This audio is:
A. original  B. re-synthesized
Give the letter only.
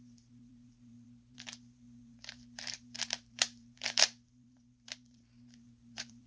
B